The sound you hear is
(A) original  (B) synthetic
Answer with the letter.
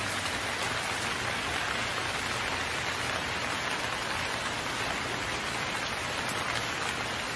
A